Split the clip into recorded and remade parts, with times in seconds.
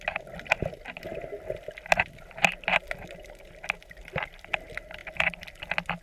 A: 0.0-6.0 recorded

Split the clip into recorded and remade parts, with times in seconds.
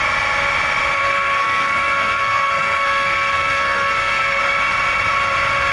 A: 0.0-1.0 recorded; 1.0-4.4 remade; 4.4-5.7 recorded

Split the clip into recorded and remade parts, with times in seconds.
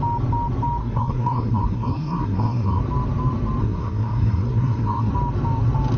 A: 0.0-0.8 recorded; 0.8-2.8 remade; 2.8-3.6 recorded; 3.6-5.1 remade; 5.1-6.0 recorded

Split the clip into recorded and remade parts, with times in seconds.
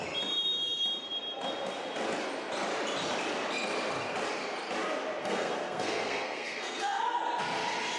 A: 0.0-5.2 recorded; 5.2-7.0 remade; 7.0-8.0 recorded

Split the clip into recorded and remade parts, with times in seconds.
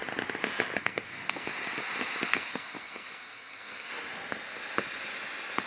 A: 0.0-0.8 recorded; 0.8-1.5 remade; 1.5-2.3 recorded; 2.3-3.9 remade; 3.9-5.7 recorded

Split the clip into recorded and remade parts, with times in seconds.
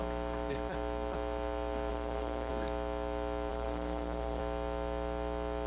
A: 0.0-1.9 recorded; 1.9-2.5 remade; 2.5-3.5 recorded; 3.5-4.4 remade; 4.4-5.7 recorded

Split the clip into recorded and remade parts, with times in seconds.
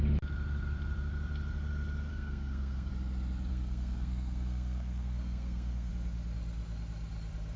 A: 0.0-2.1 recorded; 2.1-2.9 remade; 2.9-3.5 recorded; 3.5-5.9 remade; 5.9-7.6 recorded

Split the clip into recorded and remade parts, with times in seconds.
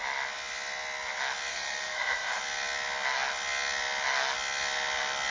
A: 0.0-1.5 recorded; 1.5-2.4 remade; 2.4-5.3 recorded